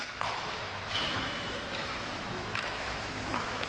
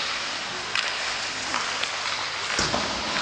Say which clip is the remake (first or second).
first